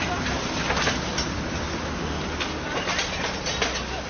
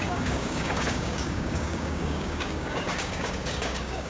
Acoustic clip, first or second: first